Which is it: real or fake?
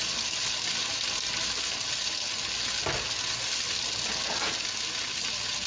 real